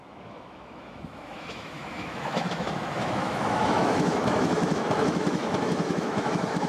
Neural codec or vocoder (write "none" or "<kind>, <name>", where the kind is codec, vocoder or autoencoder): autoencoder, DAC-VAE